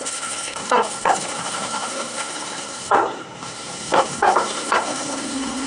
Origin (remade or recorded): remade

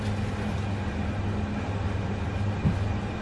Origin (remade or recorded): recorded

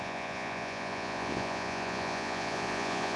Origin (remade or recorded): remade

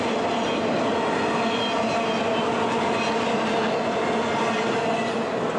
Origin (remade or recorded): recorded